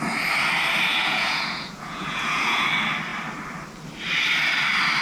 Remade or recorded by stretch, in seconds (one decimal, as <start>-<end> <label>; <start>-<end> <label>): 0.0-0.9 recorded; 0.9-2.7 remade; 2.7-5.0 recorded